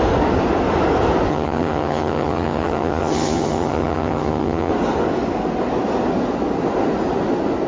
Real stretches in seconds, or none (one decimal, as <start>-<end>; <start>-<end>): 0.0-1.3; 4.7-7.7